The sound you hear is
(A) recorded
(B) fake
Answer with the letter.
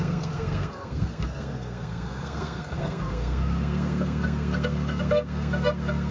B